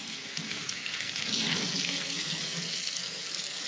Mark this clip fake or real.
fake